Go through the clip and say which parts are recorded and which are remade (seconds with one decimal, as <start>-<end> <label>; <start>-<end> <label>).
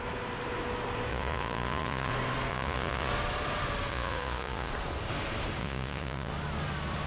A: 0.0-1.1 recorded; 1.1-2.1 remade; 2.1-2.5 recorded; 2.5-3.1 remade; 3.1-3.9 recorded; 3.9-4.7 remade; 4.7-5.6 recorded; 5.6-6.3 remade; 6.3-7.1 recorded